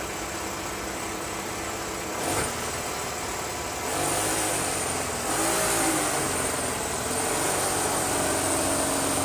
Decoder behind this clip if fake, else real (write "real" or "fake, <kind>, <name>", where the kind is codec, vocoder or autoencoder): real